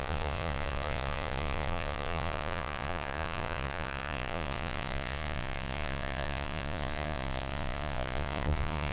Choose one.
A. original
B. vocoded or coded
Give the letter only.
B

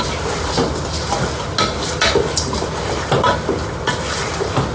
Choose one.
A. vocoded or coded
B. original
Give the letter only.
B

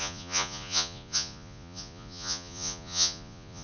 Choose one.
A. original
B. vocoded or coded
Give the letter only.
B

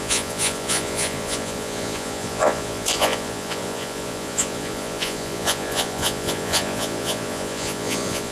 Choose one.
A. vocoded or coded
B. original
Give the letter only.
A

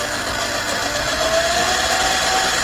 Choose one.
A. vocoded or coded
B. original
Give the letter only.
B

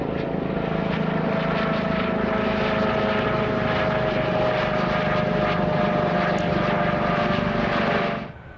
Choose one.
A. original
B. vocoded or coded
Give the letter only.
A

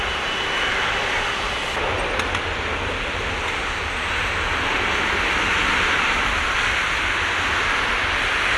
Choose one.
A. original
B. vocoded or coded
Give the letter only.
A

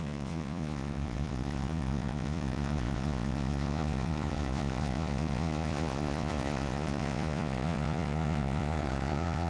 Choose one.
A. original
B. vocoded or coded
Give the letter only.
B